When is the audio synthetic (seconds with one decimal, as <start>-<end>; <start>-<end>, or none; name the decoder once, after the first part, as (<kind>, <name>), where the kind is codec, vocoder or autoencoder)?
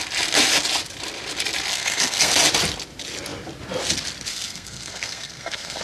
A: 1.7-2.3 (codec, SNAC); 4.3-5.8